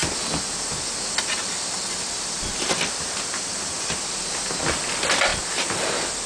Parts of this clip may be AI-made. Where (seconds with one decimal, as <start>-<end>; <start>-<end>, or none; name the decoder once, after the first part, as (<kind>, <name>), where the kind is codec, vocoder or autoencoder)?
none